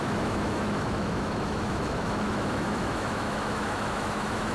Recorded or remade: remade